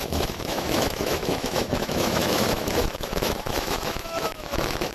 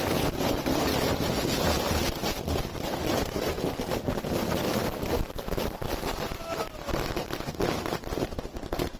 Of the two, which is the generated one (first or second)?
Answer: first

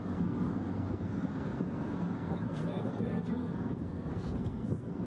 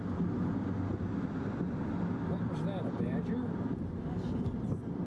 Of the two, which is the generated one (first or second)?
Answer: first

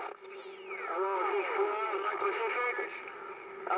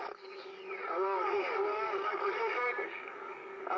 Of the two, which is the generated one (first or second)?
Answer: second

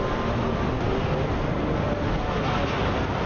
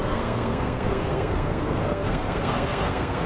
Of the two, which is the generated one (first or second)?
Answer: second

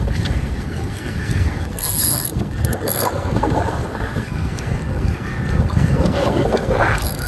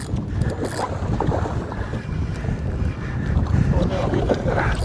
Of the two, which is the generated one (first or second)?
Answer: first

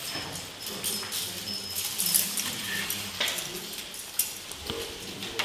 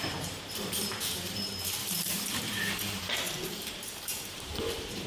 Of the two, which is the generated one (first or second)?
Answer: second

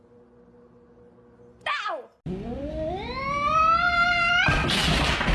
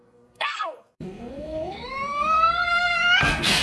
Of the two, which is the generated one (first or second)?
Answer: second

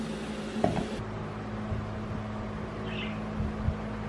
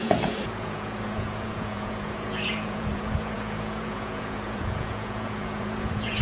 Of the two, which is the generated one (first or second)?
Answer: second